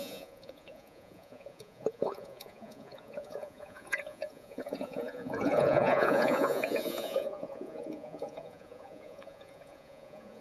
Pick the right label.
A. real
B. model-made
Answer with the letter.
B